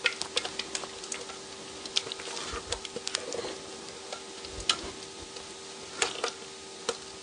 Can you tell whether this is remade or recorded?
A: recorded